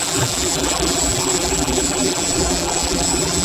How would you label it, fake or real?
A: fake